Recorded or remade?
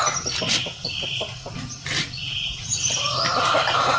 recorded